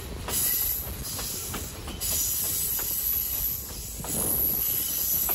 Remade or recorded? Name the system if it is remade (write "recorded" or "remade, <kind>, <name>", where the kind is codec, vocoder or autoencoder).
recorded